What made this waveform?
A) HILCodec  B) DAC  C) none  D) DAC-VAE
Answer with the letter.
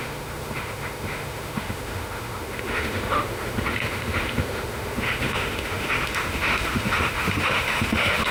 D